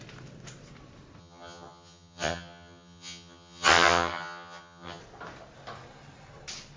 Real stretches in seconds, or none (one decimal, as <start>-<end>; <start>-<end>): 0.0-1.2; 5.0-6.8